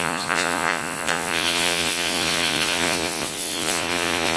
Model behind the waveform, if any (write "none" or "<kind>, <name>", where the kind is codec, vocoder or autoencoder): vocoder, Vocos